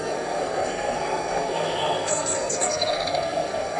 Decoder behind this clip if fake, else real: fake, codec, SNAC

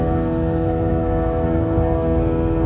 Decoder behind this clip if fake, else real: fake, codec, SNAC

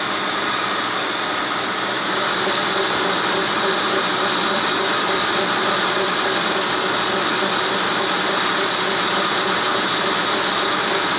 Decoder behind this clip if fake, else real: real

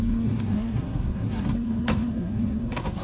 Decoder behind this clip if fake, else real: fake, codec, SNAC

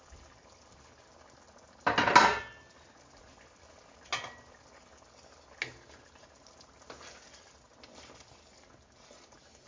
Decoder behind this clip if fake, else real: real